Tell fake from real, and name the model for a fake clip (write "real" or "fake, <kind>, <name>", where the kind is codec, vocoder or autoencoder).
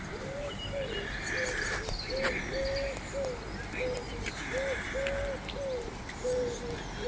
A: real